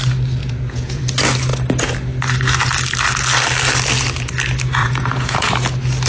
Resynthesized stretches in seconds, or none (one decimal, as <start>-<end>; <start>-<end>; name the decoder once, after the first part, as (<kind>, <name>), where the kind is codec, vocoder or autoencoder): 0.4-1.0 (vocoder, Vocos); 4.8-5.5